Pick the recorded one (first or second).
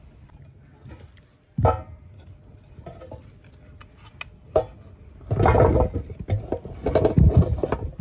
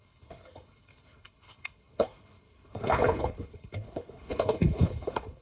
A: first